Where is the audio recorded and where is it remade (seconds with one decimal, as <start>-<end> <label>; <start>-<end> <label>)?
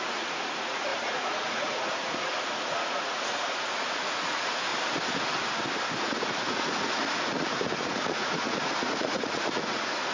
0.0-4.7 remade; 4.7-6.0 recorded; 6.0-10.1 remade